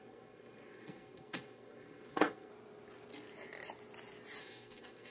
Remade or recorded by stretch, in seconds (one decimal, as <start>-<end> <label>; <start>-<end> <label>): 0.0-2.5 remade; 2.5-4.4 recorded; 4.4-5.1 remade